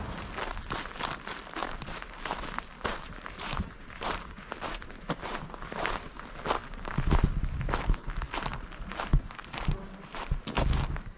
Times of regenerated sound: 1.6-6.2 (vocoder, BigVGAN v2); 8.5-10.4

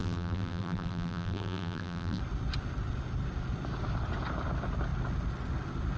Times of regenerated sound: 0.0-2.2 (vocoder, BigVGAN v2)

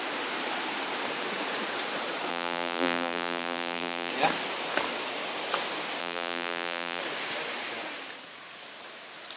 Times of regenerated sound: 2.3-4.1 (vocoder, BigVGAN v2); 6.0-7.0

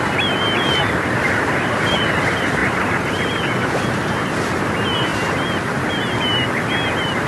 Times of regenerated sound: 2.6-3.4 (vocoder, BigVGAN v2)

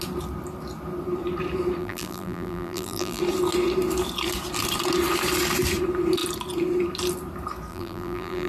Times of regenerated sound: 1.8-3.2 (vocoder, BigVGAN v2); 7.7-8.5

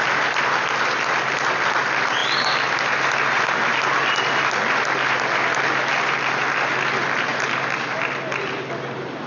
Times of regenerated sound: none